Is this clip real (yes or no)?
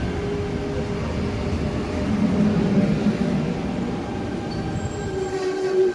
yes